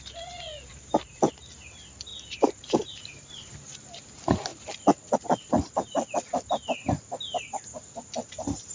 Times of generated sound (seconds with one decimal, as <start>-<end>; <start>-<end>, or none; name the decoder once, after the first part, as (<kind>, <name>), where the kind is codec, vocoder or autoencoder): 0.7-1.3 (vocoder, BigVGAN v2); 2.1-3.5